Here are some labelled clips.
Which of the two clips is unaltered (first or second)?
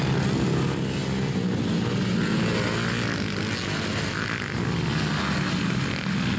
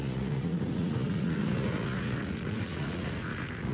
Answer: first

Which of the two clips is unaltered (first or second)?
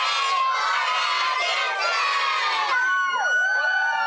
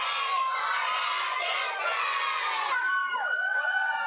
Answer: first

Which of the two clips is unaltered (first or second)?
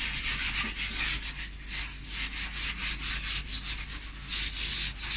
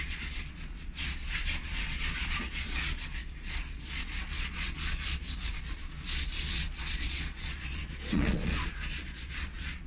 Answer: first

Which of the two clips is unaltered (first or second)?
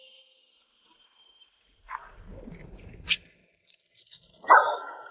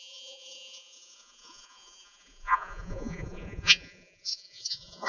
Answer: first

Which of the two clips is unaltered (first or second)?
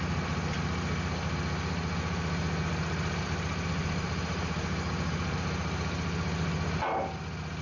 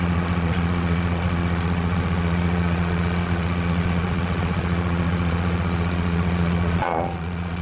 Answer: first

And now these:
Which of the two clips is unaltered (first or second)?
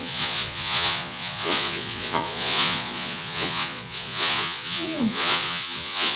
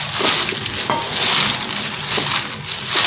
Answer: second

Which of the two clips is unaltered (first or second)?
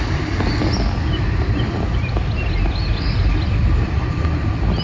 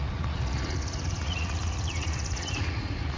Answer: first